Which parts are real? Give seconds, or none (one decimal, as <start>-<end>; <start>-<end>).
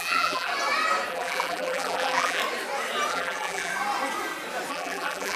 0.5-1.1; 2.4-3.1; 3.7-4.7